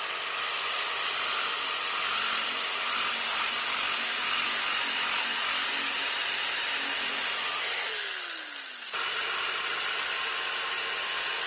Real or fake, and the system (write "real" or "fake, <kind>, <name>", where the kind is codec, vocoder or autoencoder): real